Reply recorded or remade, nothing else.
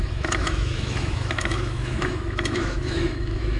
remade